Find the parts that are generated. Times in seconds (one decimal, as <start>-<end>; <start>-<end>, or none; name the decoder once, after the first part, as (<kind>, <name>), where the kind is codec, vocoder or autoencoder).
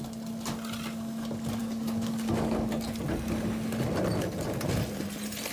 1.6-2.7 (codec, DAC)